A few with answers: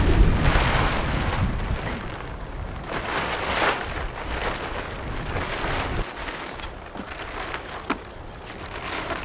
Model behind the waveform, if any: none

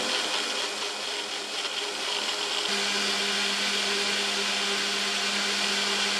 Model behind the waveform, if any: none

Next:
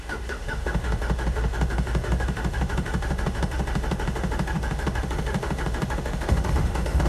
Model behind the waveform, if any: autoencoder, DAC-VAE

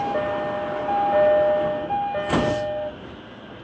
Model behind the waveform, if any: none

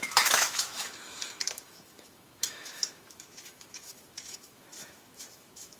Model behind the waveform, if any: autoencoder, DAC-VAE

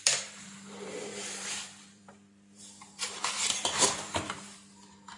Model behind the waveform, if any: vocoder, BigVGAN v2